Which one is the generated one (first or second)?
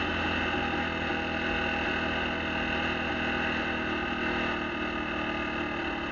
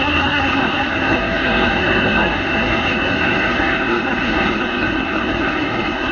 second